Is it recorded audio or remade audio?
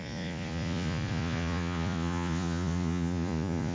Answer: remade